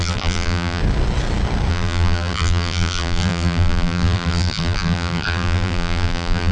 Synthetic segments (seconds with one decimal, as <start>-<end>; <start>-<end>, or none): 0.0-0.8; 1.7-6.5